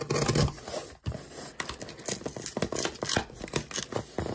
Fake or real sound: real